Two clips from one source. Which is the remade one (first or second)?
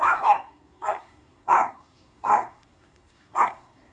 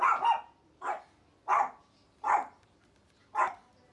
first